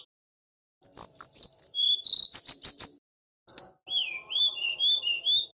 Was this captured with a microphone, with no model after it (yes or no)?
yes